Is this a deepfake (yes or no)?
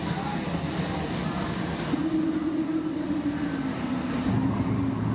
no